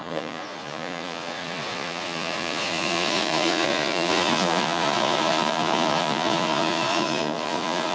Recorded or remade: remade